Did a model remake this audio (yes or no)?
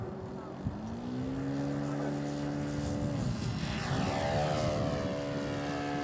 no